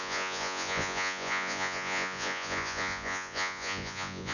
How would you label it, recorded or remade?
remade